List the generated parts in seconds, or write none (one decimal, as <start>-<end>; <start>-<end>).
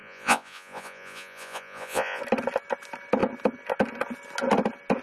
0.0-2.2